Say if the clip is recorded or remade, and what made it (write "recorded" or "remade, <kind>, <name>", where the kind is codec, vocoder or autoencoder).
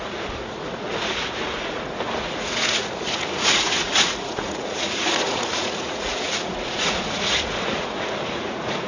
remade, vocoder, Vocos